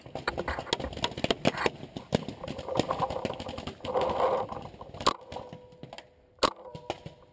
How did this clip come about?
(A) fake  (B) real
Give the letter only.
B